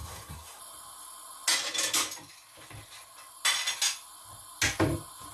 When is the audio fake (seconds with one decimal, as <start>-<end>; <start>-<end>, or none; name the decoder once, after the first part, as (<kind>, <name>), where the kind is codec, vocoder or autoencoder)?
0.0-0.6 (codec, SNAC)